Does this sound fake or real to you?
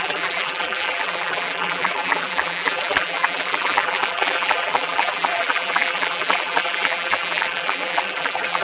fake